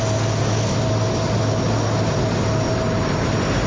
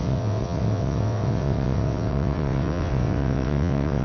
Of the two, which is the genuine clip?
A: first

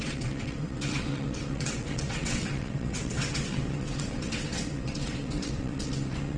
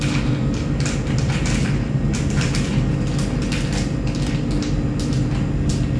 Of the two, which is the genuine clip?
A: second